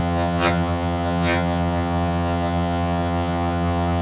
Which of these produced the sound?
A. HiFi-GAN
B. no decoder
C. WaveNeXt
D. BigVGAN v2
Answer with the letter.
A